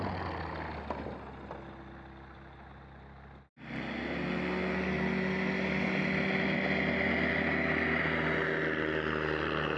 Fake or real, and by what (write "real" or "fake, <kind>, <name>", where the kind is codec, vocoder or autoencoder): real